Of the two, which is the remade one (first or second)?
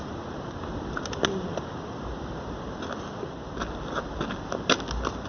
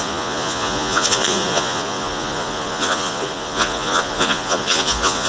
second